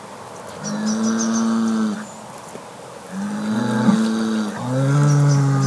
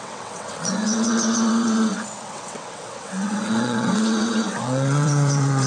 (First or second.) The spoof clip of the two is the second